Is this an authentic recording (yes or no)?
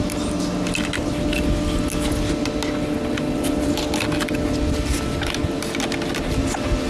yes